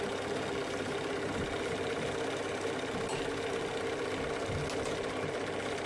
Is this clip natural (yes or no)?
yes